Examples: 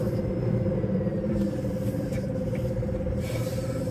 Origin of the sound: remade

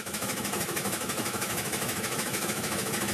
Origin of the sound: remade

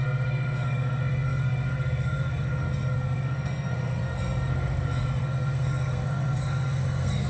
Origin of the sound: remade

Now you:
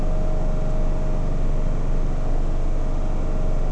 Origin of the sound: recorded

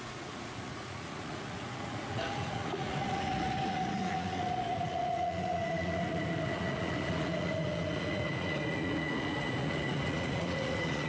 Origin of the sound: remade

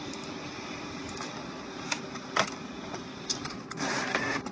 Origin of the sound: recorded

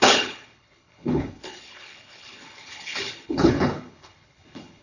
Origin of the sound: remade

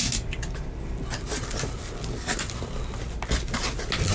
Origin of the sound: recorded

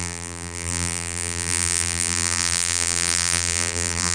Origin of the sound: remade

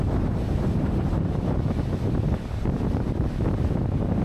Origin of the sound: recorded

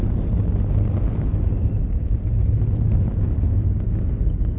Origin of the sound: recorded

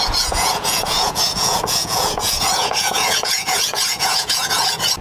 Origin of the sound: remade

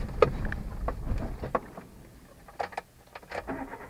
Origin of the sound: recorded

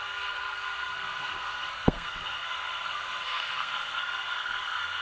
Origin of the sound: remade